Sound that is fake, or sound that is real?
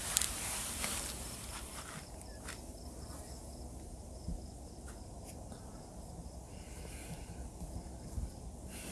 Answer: fake